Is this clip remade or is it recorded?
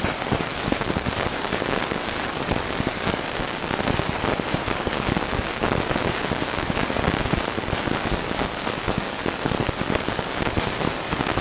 remade